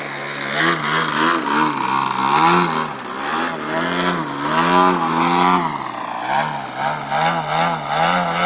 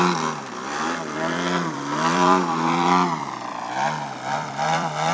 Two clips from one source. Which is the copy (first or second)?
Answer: second